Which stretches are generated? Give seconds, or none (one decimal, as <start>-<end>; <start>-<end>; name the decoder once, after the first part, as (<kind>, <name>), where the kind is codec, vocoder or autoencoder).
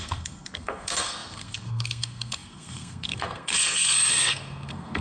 0.0-5.0 (codec, SNAC)